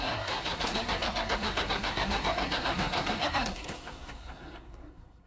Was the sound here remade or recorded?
remade